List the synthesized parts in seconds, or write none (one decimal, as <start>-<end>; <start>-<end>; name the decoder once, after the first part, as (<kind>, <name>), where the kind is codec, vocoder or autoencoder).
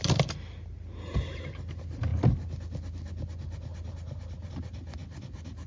none